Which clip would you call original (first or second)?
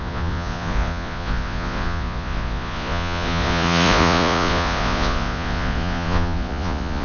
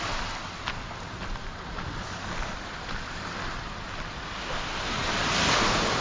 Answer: second